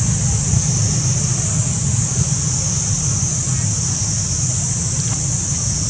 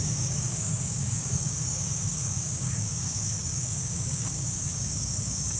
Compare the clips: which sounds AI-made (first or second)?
second